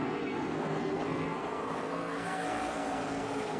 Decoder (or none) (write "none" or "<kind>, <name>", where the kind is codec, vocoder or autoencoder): codec, SNAC